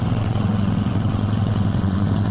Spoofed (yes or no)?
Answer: yes